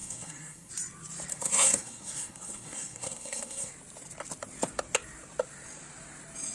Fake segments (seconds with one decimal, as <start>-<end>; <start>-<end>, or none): 0.0-0.7; 1.3-3.7